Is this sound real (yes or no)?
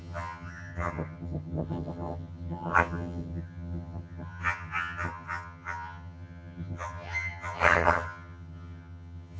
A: no